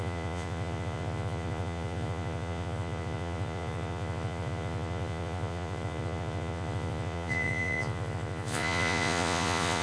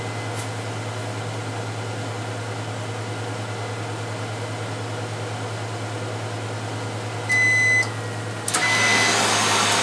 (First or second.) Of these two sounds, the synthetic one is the first